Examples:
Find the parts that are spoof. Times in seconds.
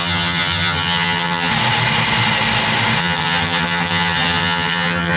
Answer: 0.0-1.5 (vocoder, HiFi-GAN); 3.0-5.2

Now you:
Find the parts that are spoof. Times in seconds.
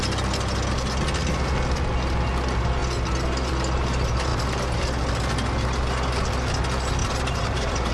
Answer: 4.3-4.8 (vocoder, BigVGAN v2); 7.0-7.9